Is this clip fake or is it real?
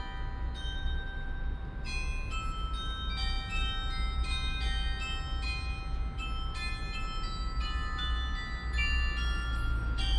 real